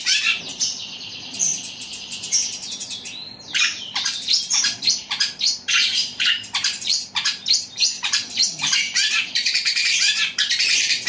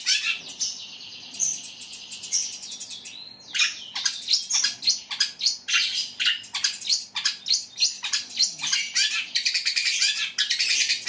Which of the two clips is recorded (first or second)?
second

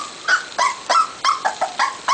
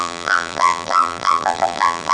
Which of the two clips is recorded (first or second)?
first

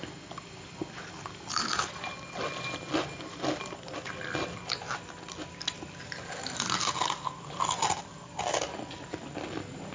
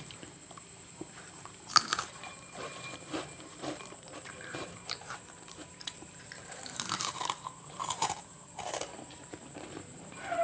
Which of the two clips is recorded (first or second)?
first